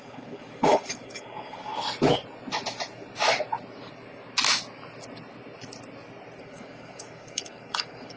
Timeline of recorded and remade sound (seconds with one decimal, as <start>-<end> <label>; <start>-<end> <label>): 0.0-1.7 remade; 1.7-6.4 recorded; 6.4-8.2 remade